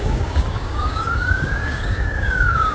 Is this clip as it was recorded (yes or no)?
no